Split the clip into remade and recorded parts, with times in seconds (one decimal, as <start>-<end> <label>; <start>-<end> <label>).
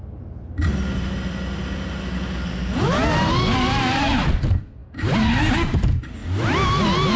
0.0-7.2 recorded